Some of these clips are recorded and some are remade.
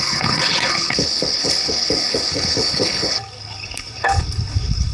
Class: remade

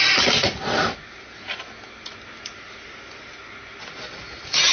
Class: recorded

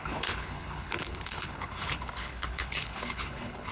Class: remade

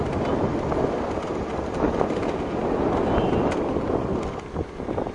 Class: recorded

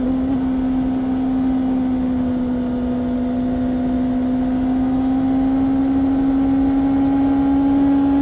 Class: recorded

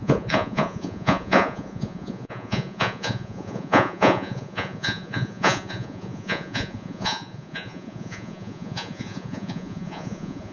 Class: remade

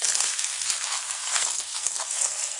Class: remade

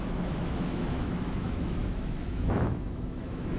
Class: remade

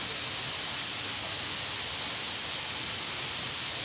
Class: recorded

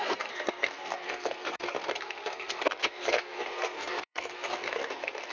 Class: remade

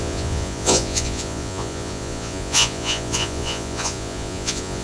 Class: remade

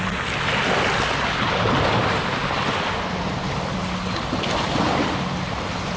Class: recorded